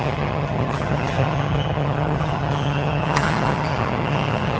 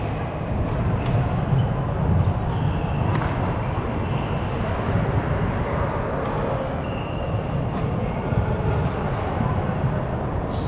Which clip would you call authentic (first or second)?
second